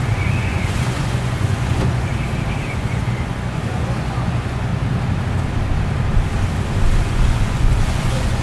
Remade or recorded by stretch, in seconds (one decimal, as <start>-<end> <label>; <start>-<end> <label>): 0.0-2.1 remade; 2.1-2.7 recorded; 2.7-4.7 remade; 4.7-7.0 recorded; 7.0-8.4 remade